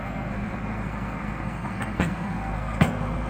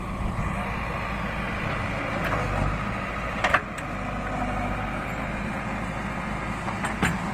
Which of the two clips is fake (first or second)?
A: first